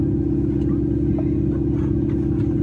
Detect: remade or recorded recorded